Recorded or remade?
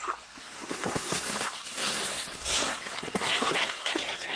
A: remade